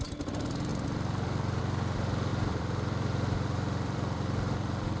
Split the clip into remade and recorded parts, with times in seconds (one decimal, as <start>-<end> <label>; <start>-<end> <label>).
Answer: 0.0-0.7 recorded; 0.7-1.6 remade; 1.6-2.3 recorded; 2.3-5.0 remade